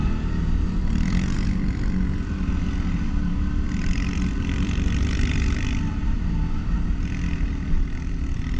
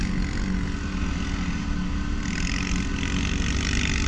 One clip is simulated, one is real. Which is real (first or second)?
second